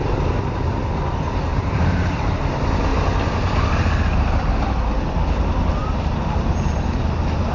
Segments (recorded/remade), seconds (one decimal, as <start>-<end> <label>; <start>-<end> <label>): 0.0-1.5 recorded; 1.5-2.3 remade; 2.3-2.9 recorded; 2.9-4.5 remade; 4.5-5.8 recorded; 5.8-6.8 remade; 6.8-7.5 recorded